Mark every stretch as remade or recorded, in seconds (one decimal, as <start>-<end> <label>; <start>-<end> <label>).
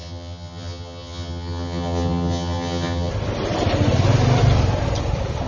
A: 0.0-3.1 remade; 3.1-5.5 recorded